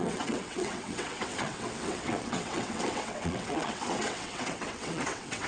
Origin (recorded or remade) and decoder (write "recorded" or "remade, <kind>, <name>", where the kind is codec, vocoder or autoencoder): remade, vocoder, WaveNeXt